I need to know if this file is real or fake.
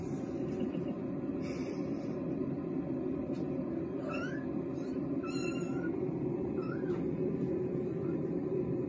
fake